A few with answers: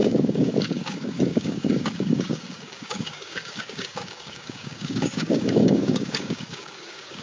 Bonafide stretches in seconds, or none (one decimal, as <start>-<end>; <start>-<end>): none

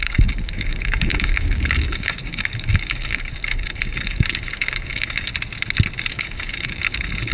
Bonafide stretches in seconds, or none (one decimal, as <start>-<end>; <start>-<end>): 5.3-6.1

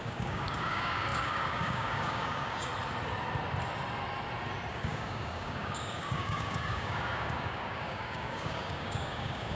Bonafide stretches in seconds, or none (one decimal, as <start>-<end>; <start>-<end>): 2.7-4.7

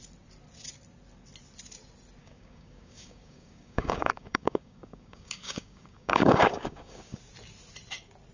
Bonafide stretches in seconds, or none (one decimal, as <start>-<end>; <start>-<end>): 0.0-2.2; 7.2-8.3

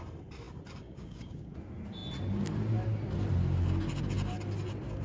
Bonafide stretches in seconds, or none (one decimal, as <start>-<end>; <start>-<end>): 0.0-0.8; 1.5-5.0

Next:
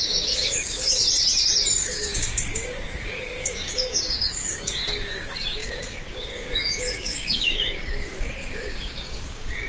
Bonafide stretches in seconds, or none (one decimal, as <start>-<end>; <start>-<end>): 1.0-1.7

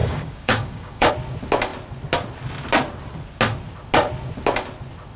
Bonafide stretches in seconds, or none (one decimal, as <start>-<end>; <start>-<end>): 1.1-5.2

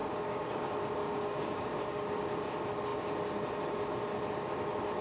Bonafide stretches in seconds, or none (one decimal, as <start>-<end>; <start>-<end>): 0.6-1.0; 2.2-5.0